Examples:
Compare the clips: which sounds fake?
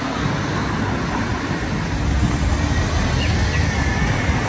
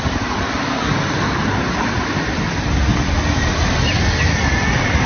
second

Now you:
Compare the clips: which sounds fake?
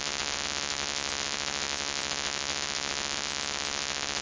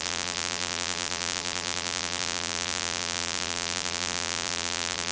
second